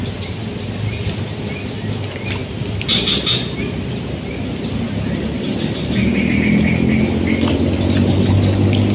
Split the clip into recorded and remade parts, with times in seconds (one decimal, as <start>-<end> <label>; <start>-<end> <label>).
0.0-8.9 recorded